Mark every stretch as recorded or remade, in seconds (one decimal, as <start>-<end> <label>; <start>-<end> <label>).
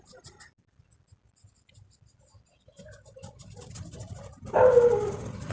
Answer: 0.0-5.5 recorded